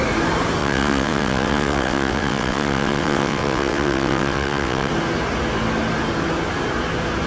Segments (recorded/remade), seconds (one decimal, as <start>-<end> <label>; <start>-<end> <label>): 0.0-0.6 recorded; 0.6-4.9 remade; 4.9-7.3 recorded